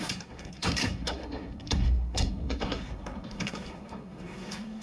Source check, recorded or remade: remade